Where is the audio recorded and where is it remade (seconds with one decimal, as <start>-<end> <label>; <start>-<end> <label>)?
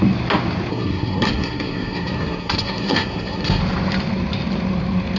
0.0-0.7 recorded; 0.7-3.6 remade; 3.6-5.2 recorded